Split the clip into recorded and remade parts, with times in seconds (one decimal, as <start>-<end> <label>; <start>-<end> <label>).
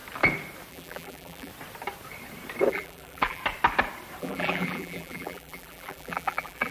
0.0-0.7 recorded; 0.7-1.5 remade; 1.5-2.7 recorded; 2.7-3.4 remade; 3.4-4.2 recorded; 4.2-6.7 remade